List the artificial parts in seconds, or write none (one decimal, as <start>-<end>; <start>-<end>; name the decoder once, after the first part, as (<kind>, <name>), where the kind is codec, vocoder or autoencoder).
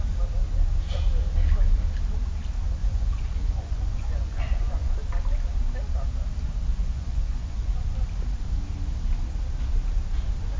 2.8-4.9 (vocoder, Vocos); 6.7-7.8